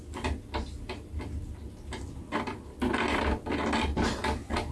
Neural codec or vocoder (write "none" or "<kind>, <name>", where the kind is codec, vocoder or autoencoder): none